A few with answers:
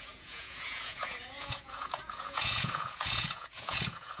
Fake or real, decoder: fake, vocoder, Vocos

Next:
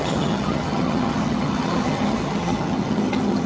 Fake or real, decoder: fake, vocoder, HiFi-GAN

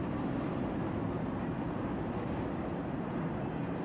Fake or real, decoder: real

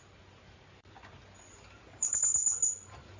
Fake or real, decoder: real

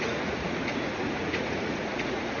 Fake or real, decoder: fake, vocoder, Vocos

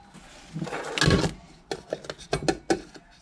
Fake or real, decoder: real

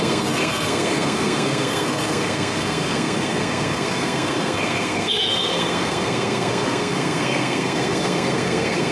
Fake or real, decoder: fake, codec, SNAC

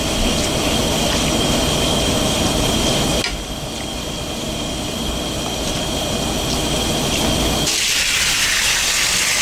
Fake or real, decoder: real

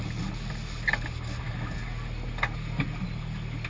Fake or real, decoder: real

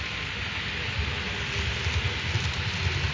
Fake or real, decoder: real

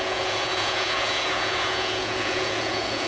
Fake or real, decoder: fake, vocoder, Vocos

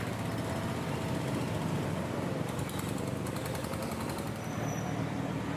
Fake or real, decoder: fake, vocoder, BigVGAN v2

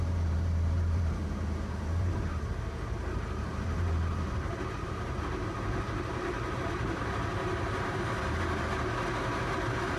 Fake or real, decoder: fake, vocoder, BigVGAN v2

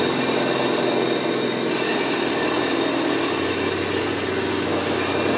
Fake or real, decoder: real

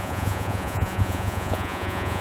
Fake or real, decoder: fake, vocoder, Vocos